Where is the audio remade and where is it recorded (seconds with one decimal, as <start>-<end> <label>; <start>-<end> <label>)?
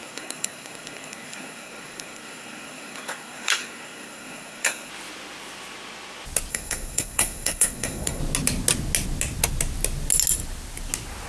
0.0-4.9 remade; 4.9-6.5 recorded; 6.5-8.2 remade; 8.2-11.3 recorded